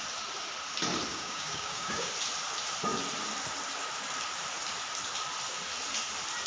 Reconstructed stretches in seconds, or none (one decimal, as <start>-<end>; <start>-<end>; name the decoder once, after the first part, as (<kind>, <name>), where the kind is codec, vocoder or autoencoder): 1.1-2.1 (codec, DAC)